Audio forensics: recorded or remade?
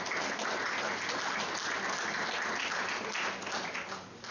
recorded